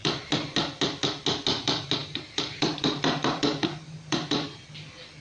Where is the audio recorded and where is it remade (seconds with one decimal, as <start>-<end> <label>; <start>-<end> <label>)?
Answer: 0.0-2.0 recorded; 2.0-4.7 remade; 4.7-5.2 recorded